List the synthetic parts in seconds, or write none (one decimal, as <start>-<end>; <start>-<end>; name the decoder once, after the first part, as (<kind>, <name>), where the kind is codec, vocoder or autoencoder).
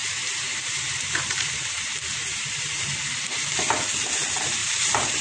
0.0-3.1 (vocoder, BigVGAN v2); 4.6-5.2